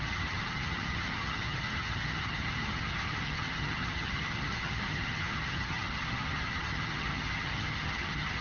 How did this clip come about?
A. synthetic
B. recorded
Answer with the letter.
A